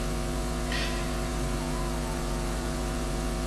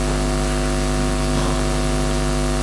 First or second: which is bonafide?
second